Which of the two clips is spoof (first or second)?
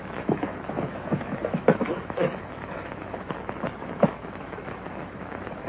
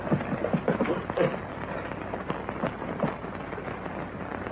first